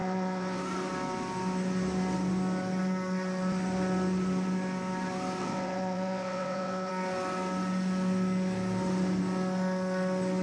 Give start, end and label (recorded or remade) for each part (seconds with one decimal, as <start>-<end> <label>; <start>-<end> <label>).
0.0-0.6 remade; 0.6-5.4 recorded; 5.4-6.9 remade; 6.9-10.4 recorded